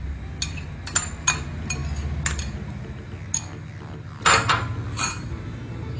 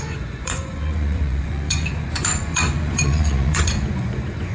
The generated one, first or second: second